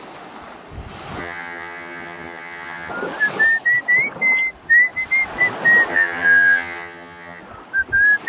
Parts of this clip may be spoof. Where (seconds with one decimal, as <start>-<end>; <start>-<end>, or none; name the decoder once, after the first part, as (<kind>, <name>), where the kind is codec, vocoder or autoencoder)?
1.2-2.9 (vocoder, HiFi-GAN); 5.9-7.4